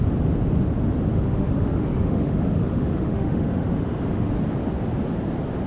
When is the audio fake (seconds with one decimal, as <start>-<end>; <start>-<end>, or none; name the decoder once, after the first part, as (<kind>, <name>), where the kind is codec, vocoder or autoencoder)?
1.1-4.3 (autoencoder, DAC-VAE)

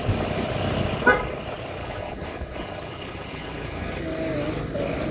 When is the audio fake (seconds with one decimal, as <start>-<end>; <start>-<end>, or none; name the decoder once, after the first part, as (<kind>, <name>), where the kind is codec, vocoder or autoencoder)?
1.8-4.0 (codec, HILCodec)

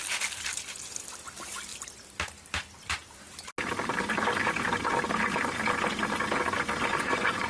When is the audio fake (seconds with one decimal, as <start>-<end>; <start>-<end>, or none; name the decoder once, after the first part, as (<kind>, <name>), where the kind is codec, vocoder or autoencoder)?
6.9-7.5 (vocoder, Vocos)

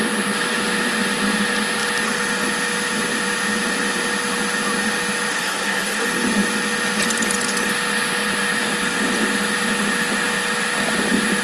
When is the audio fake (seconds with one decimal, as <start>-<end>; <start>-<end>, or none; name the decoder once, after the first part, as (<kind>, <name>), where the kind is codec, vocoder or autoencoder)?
5.3-6.1 (codec, SNAC)